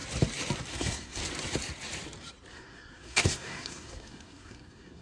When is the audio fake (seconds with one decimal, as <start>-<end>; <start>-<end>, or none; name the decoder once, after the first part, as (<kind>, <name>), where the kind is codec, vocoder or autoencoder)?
0.7-1.2 (codec, SNAC); 2.5-5.0